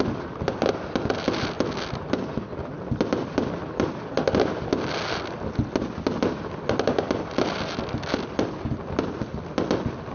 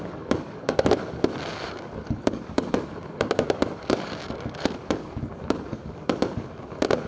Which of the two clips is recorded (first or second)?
first